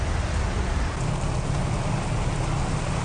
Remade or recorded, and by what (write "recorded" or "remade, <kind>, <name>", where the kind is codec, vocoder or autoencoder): recorded